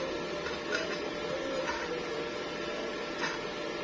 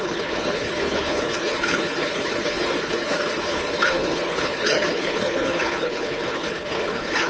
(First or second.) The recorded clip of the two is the first